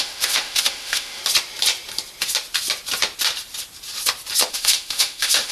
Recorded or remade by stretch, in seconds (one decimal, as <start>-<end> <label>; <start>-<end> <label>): 0.0-1.2 remade; 1.2-4.5 recorded; 4.5-5.5 remade